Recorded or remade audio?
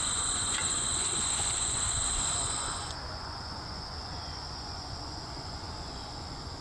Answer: remade